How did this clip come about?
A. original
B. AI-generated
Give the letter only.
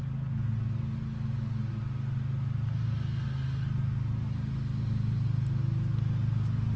A